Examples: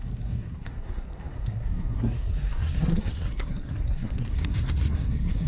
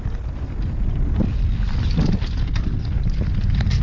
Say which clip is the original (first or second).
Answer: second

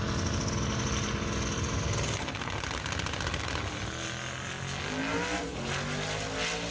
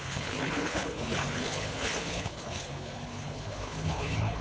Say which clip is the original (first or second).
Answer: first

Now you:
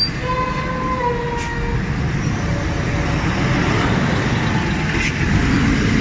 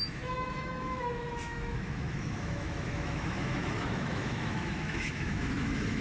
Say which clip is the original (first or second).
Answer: first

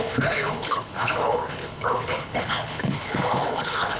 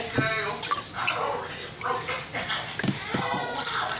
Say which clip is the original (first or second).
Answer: second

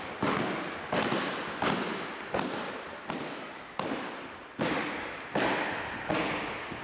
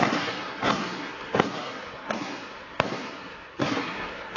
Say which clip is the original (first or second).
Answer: first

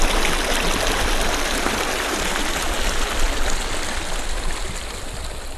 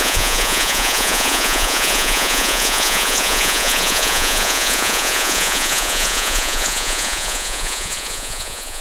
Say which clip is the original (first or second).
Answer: first